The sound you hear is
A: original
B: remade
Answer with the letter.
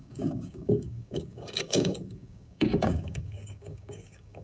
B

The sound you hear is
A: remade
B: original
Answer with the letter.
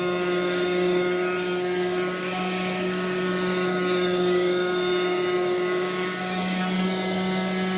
A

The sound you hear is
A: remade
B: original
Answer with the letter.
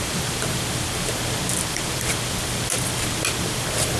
B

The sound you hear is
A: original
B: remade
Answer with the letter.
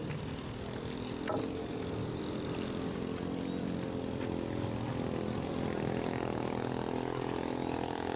A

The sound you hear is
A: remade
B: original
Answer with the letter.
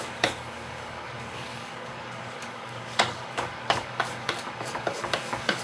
A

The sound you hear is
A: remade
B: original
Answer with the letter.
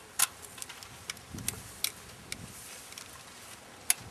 B